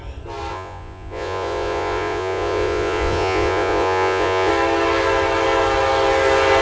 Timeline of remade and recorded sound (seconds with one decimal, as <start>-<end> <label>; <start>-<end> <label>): 0.0-0.5 recorded; 0.5-4.5 remade; 4.5-6.6 recorded